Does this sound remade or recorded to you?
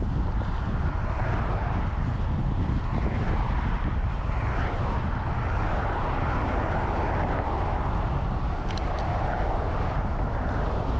recorded